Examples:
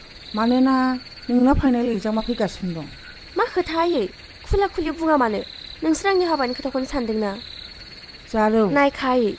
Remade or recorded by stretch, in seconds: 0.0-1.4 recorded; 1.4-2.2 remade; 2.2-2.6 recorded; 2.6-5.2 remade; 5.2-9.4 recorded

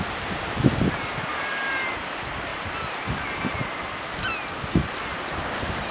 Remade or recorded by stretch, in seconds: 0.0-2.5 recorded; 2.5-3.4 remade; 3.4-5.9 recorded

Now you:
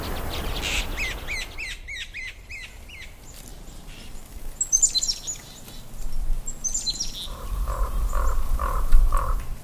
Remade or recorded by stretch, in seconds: 0.0-3.5 recorded; 3.5-4.4 remade; 4.4-9.6 recorded

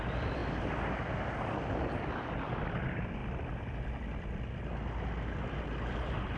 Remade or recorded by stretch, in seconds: 0.0-0.4 remade; 0.4-1.0 recorded; 1.0-6.4 remade